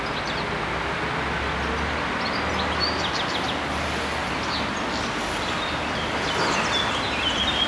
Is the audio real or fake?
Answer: real